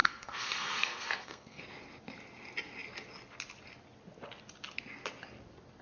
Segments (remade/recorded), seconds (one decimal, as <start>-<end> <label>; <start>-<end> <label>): 0.0-1.6 remade; 1.6-5.8 recorded